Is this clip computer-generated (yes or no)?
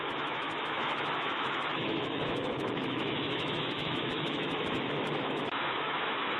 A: yes